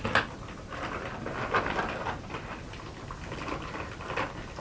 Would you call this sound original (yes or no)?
yes